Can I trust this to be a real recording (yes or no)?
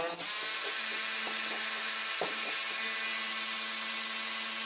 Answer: yes